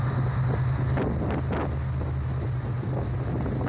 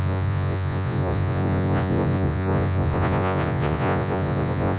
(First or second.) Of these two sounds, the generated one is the second